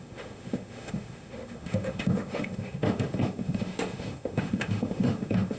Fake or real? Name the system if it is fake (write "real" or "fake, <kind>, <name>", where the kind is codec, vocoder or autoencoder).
fake, autoencoder, DAC-VAE